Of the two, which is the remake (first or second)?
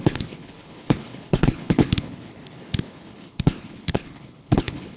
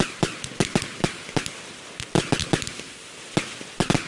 first